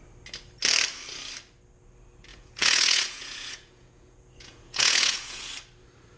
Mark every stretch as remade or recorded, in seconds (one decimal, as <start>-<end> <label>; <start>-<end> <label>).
0.0-2.3 recorded; 2.3-5.5 remade; 5.5-6.2 recorded